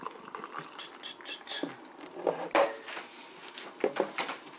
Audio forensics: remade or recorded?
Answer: recorded